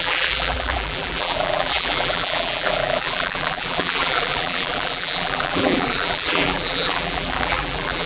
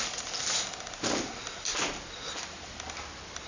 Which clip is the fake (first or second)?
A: first